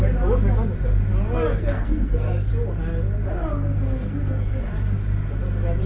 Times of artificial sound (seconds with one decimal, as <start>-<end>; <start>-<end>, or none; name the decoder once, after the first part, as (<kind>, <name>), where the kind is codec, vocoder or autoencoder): 1.5-2.5 (codec, SNAC); 3.5-4.7